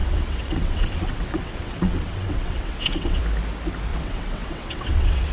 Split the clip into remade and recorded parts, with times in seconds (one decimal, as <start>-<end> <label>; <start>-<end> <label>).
0.0-3.2 remade; 3.2-3.9 recorded; 3.9-5.3 remade